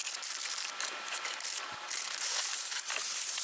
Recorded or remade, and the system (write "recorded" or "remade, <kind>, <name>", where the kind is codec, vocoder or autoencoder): recorded